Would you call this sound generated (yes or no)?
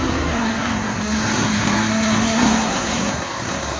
yes